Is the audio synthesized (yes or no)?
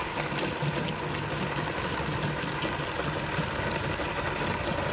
no